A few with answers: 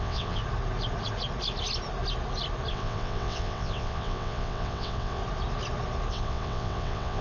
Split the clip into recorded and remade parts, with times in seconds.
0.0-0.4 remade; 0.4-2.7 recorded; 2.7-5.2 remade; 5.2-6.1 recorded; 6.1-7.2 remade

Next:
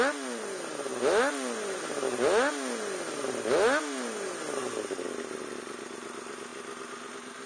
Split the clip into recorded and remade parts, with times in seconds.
0.0-7.5 recorded

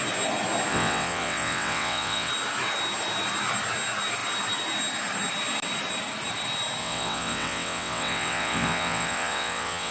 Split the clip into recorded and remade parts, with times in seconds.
0.0-0.7 recorded; 0.7-2.3 remade; 2.3-6.8 recorded; 6.8-9.9 remade

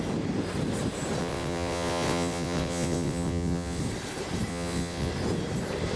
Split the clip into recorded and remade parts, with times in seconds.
0.0-1.2 recorded; 1.2-3.8 remade; 3.8-4.5 recorded; 4.5-5.1 remade; 5.1-6.0 recorded

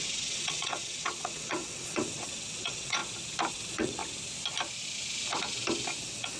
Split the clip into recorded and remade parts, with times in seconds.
0.0-3.0 remade; 3.0-3.5 recorded; 3.5-4.0 remade; 4.0-6.0 recorded; 6.0-6.4 remade

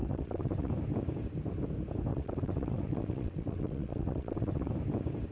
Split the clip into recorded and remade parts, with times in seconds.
0.0-0.7 remade; 0.7-2.1 recorded; 2.1-4.7 remade; 4.7-5.3 recorded

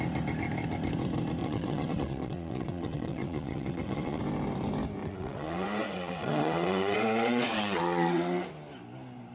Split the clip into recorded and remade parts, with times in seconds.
0.0-1.4 recorded; 1.4-4.2 remade; 4.2-5.0 recorded; 5.0-8.5 remade; 8.5-9.3 recorded